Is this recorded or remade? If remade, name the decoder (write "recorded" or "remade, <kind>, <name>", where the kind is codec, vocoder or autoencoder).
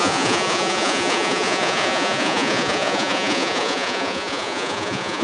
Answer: remade, vocoder, Vocos